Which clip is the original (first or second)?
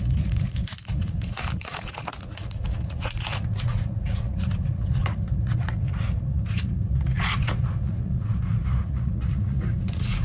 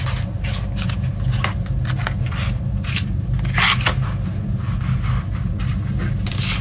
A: second